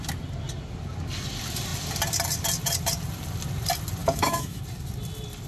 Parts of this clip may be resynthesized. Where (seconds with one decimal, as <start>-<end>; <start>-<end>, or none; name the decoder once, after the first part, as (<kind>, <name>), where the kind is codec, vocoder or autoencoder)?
4.0-4.6 (autoencoder, DAC-VAE)